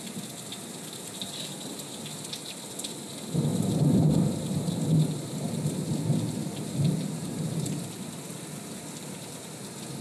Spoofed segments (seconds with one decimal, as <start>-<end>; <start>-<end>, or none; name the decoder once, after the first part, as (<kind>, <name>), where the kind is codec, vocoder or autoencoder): 5.8-9.5 (vocoder, BigVGAN v2)